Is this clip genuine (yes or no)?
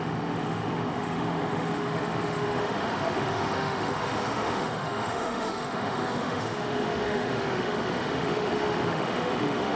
no